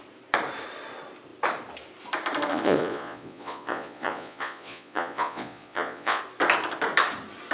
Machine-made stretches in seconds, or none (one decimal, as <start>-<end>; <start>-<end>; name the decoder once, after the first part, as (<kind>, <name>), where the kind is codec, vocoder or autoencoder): 2.5-6.2 (vocoder, Vocos)